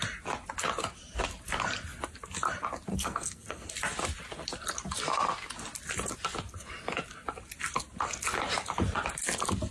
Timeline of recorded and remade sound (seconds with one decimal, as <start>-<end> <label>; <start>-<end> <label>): 0.0-2.9 recorded; 2.9-3.7 remade; 3.7-9.7 recorded

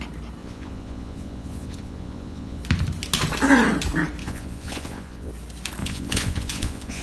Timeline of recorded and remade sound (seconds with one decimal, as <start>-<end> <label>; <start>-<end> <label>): 0.0-0.4 recorded; 0.4-2.6 remade; 2.6-4.2 recorded; 4.2-5.3 remade; 5.3-5.8 recorded; 5.8-7.0 remade

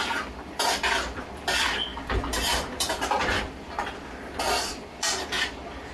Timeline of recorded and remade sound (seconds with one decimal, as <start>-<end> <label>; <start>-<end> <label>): 0.0-5.9 recorded

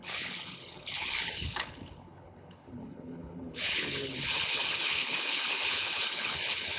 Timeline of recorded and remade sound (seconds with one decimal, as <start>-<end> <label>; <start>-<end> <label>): 0.0-6.8 remade